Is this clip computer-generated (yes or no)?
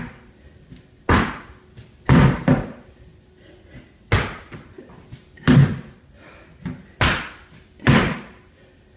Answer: no